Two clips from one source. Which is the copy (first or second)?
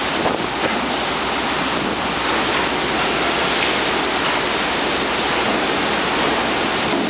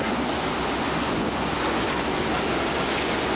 second